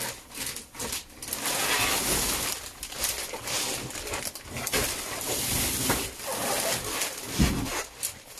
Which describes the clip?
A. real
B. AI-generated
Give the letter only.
A